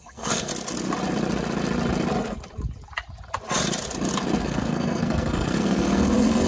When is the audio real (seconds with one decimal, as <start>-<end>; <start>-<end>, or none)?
0.5-4.4